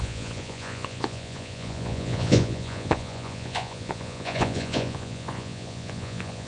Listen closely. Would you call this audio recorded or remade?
remade